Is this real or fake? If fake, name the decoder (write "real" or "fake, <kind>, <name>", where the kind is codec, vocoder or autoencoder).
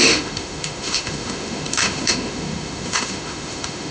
fake, autoencoder, DAC-VAE